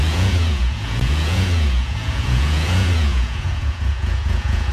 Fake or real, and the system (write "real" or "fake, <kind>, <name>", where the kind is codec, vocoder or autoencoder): fake, vocoder, Vocos